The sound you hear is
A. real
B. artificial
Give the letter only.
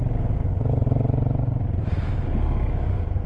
A